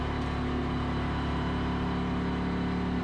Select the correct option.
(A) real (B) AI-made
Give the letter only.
A